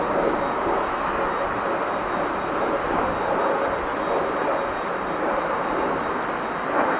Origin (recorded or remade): recorded